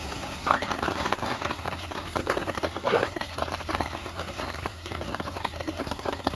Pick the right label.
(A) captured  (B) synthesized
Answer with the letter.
B